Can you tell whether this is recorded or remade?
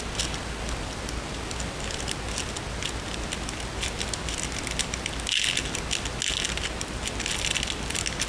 recorded